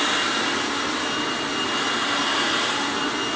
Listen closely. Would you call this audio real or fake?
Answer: real